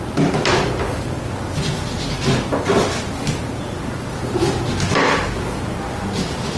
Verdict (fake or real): real